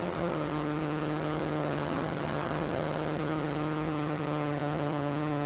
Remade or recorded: remade